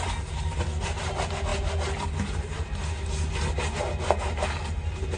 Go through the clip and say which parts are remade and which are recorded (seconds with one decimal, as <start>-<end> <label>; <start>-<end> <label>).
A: 0.0-5.2 recorded